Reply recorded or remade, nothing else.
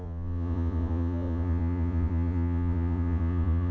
remade